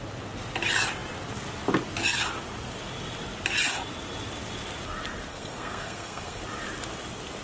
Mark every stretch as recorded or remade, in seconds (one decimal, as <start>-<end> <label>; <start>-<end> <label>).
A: 0.0-5.3 recorded; 5.3-6.4 remade; 6.4-7.4 recorded